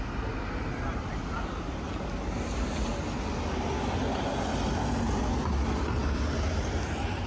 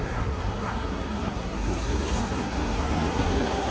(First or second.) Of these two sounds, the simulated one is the second